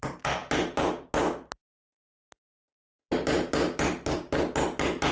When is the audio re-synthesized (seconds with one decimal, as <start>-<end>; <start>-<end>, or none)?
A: none